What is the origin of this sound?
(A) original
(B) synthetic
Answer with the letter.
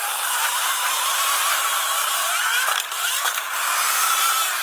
B